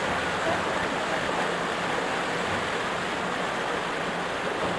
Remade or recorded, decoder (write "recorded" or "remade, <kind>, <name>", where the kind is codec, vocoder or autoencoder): recorded